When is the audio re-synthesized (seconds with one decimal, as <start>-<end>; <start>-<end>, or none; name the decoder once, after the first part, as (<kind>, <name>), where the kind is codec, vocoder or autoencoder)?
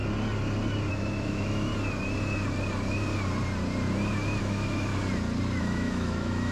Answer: 0.9-1.7 (autoencoder, DAC-VAE); 4.4-4.9; 5.6-6.5